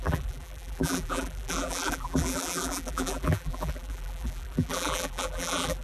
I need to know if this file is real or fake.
fake